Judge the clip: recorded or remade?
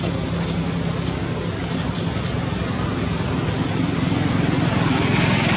recorded